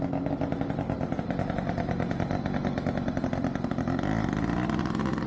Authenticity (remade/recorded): recorded